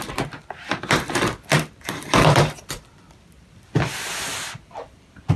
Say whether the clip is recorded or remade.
remade